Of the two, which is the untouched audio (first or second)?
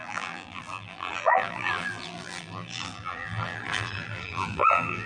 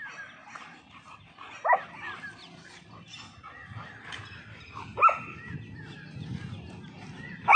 second